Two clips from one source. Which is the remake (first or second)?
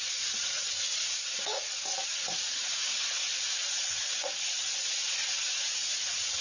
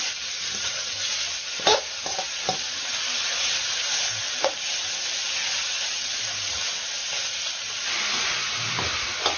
first